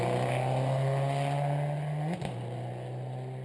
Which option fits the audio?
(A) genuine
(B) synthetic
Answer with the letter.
A